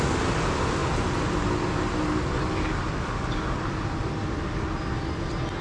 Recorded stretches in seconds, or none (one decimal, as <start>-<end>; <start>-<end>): 0.0-5.6